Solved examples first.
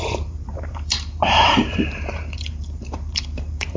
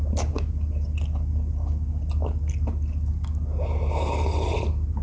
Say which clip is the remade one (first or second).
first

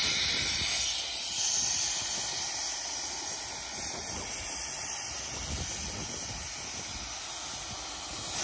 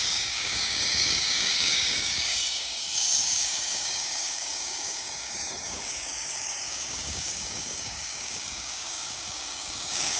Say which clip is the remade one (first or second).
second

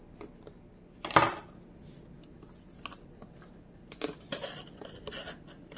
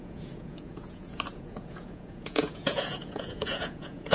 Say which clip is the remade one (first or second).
second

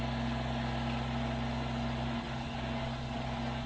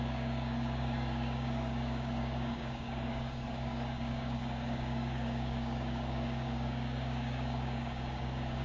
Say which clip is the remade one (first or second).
second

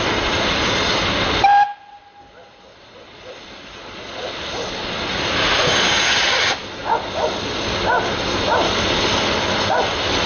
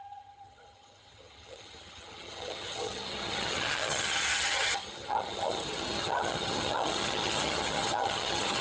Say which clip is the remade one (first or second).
second